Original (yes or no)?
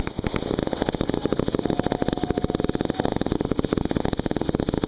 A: yes